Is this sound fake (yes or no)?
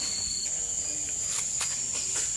no